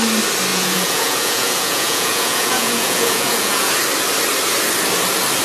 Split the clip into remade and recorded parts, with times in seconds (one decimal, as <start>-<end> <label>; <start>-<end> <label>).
0.0-0.5 recorded; 0.5-3.7 remade; 3.7-5.4 recorded

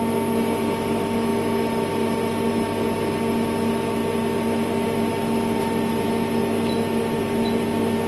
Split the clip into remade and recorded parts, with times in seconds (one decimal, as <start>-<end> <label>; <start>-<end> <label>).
0.0-8.1 recorded

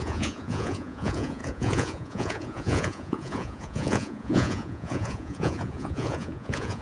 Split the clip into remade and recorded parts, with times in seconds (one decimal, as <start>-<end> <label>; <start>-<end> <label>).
0.0-6.8 remade

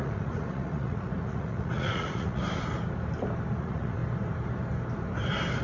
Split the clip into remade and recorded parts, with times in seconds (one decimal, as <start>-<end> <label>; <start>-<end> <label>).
0.0-2.4 remade; 2.4-3.6 recorded; 3.6-4.0 remade; 4.0-5.6 recorded